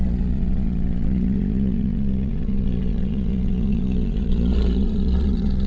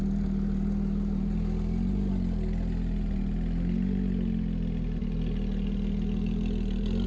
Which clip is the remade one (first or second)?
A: first